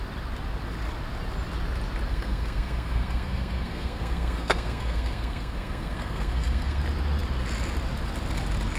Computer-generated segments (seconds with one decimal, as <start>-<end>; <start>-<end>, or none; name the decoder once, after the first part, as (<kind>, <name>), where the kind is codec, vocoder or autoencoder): 2.1-6.8 (codec, SNAC)